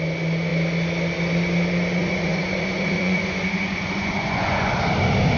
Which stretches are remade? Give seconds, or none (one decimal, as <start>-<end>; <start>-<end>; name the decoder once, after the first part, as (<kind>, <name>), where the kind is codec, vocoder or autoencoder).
2.0-4.7 (vocoder, Vocos)